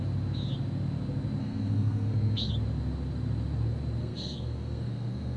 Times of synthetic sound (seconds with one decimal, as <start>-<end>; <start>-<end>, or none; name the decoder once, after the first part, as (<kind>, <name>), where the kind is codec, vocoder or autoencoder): 1.4-2.5 (codec, SNAC); 4.0-5.4